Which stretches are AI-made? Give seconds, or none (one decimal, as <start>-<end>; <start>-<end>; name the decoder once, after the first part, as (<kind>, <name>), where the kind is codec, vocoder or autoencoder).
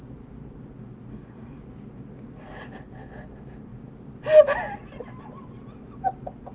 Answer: 1.1-1.6 (codec, DAC)